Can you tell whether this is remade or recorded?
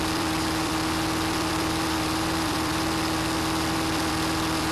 remade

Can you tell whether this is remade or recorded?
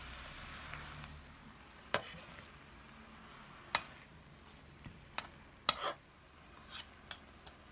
recorded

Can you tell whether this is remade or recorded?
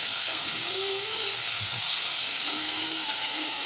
remade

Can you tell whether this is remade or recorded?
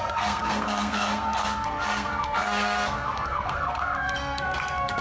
remade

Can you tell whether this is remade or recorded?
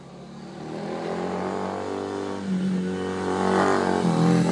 recorded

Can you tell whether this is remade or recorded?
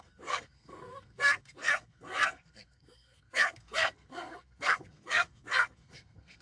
remade